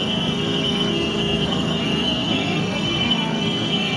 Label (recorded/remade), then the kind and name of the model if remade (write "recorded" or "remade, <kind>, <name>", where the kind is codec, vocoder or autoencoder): remade, codec, SNAC